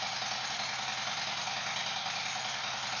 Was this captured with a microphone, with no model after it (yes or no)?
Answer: yes